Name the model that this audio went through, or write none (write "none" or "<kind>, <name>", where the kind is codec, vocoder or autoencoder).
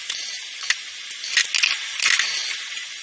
none